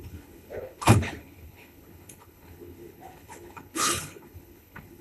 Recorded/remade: remade